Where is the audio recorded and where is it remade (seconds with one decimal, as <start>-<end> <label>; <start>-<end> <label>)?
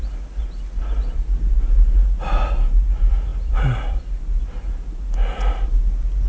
0.0-6.3 recorded